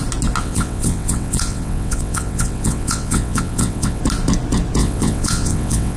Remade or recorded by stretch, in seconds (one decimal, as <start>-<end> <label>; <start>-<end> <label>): 0.0-0.4 recorded; 0.4-4.0 remade; 4.0-4.8 recorded; 4.8-6.0 remade